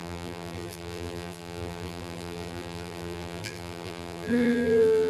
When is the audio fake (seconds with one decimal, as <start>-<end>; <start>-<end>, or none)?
0.0-5.1

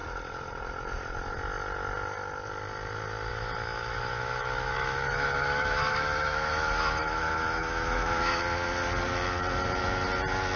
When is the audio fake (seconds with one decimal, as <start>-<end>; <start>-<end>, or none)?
3.3-8.4

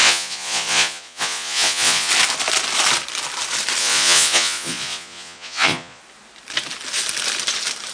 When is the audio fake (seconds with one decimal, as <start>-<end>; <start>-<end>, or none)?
0.0-2.1; 3.8-6.0